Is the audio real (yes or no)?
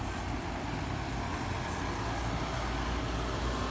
yes